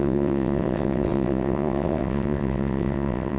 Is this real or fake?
fake